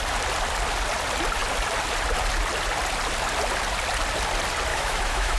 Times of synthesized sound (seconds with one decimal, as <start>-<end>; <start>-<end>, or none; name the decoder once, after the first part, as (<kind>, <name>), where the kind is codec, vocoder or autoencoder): 4.7-5.4 (autoencoder, DAC-VAE)